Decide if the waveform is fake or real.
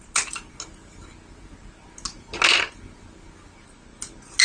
real